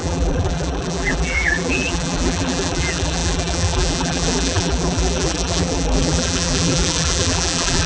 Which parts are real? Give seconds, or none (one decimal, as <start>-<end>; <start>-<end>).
none